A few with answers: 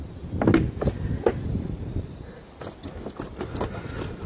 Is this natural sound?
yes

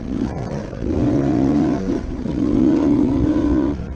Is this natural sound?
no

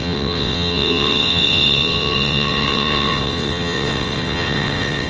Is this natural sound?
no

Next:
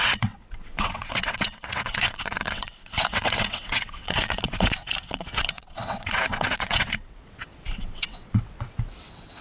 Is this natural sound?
no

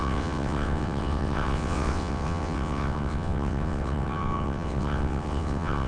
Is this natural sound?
no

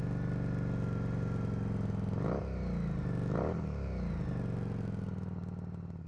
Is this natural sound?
yes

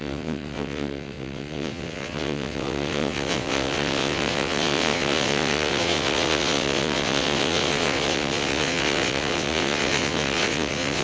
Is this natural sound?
no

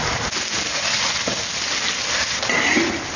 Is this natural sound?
yes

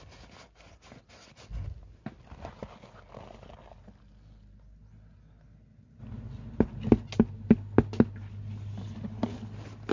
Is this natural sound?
yes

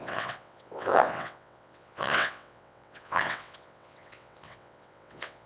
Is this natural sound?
no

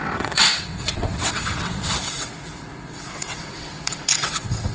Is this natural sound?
no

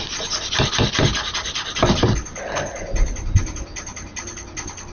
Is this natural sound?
yes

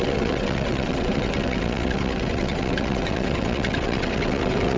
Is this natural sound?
no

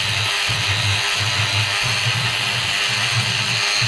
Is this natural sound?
yes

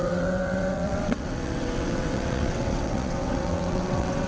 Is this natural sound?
no